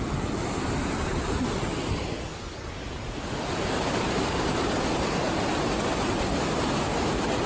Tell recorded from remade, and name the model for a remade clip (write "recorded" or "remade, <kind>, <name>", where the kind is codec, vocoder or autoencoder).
recorded